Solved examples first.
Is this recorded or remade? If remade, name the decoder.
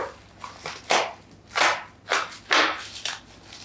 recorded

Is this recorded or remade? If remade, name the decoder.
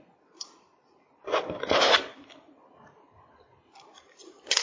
recorded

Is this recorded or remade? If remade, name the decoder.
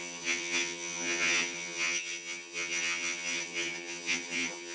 remade, vocoder, HiFi-GAN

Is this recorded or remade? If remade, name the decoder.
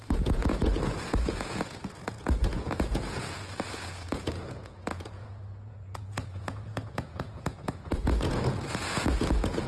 remade, vocoder, Vocos